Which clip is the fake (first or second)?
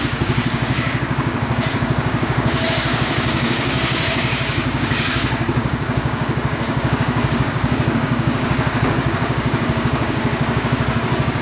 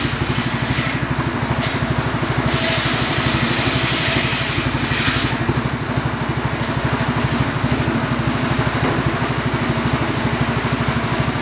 first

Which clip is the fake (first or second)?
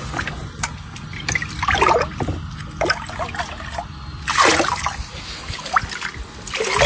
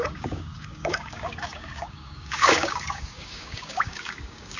second